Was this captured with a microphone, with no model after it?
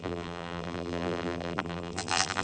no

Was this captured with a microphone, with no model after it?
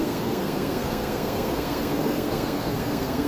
no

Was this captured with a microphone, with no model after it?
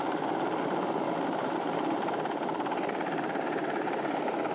yes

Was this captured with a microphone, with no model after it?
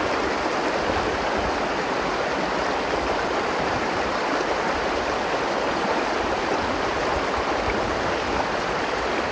yes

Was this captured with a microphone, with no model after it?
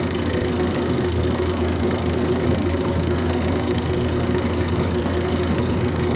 no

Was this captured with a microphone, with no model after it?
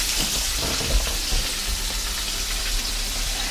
no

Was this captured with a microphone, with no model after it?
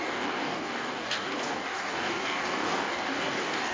no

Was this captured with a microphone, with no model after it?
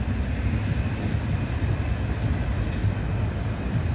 yes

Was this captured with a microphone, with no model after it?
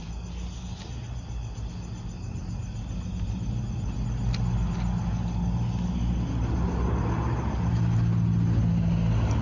yes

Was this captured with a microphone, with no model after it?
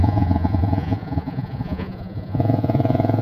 no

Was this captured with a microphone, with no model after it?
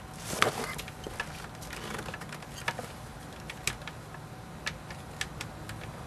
yes